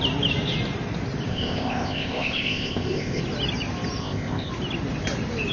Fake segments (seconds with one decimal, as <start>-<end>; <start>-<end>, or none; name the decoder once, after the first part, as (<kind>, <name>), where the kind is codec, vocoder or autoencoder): 1.3-3.2 (codec, ZipCodec); 4.0-4.5